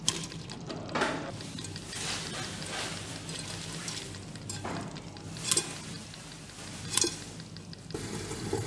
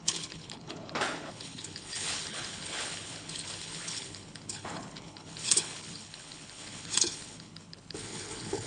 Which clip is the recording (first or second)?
first